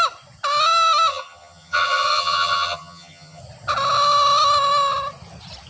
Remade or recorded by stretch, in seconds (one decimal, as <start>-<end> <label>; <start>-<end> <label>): 0.0-1.1 recorded; 1.1-3.4 remade; 3.4-5.7 recorded